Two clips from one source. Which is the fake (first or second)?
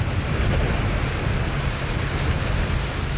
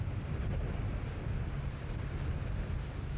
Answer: second